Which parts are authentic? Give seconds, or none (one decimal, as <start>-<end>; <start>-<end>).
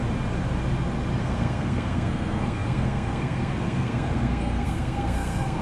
0.0-1.2